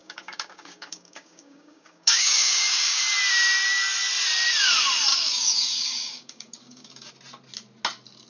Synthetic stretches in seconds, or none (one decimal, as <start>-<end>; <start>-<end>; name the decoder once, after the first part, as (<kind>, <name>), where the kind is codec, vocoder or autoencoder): 0.0-3.0 (codec, DAC); 5.1-7.1